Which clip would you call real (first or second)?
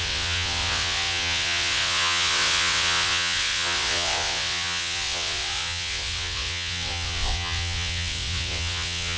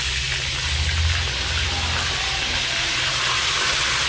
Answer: second